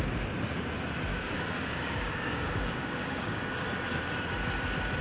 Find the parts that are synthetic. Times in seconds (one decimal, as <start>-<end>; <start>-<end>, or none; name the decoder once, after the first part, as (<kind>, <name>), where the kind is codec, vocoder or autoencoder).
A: 1.1-3.4 (codec, DAC)